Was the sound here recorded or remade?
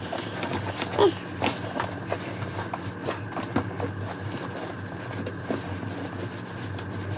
recorded